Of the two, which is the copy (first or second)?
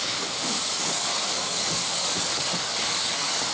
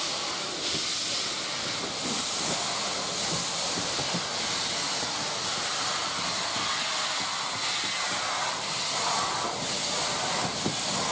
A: first